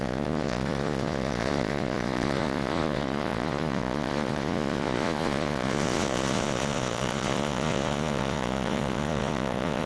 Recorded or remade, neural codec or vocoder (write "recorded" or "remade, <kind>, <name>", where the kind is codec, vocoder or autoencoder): remade, vocoder, Vocos